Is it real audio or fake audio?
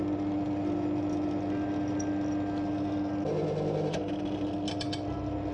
real